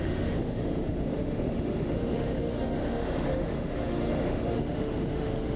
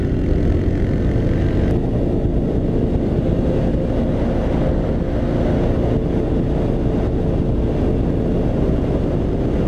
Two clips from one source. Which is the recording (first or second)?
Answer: second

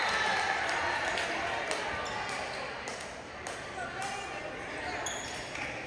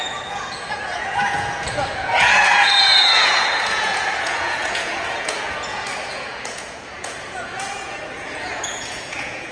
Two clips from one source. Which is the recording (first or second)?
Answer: first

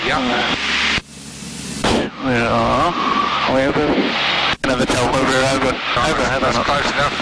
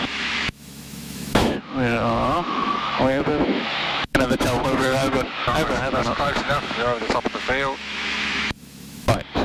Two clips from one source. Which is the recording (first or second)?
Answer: first